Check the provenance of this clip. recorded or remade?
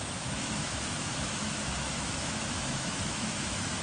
remade